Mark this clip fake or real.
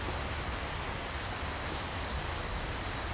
real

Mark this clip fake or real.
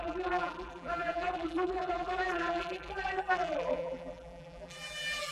fake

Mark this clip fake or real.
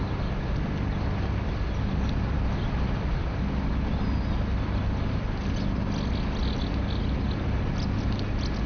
real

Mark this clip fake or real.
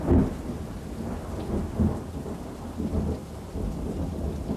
real